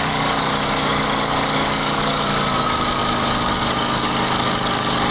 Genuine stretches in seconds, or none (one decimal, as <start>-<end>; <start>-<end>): none